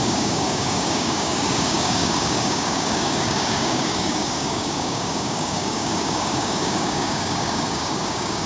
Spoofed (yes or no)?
yes